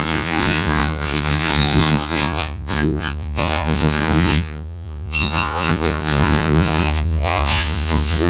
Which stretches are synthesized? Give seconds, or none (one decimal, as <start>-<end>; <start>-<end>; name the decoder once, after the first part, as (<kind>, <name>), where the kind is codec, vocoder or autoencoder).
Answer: 0.0-8.3 (vocoder, Vocos)